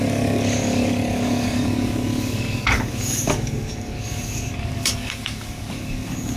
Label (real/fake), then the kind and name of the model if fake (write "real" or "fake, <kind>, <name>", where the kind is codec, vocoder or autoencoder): fake, codec, DAC